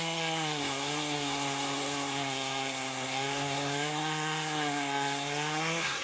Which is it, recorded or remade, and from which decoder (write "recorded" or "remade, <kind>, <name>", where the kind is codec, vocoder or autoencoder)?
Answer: remade, codec, SNAC